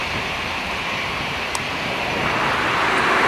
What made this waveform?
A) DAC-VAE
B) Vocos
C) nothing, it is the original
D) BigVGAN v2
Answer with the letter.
C